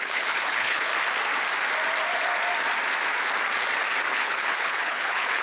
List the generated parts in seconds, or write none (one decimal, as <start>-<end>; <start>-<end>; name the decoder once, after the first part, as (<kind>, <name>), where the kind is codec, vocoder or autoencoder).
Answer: 0.0-0.9 (codec, HILCodec); 4.1-5.4